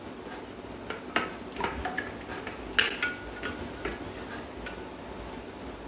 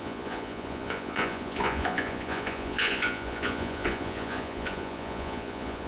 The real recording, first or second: first